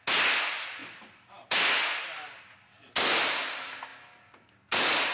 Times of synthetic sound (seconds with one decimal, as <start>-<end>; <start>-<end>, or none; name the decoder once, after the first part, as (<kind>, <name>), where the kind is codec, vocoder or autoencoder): none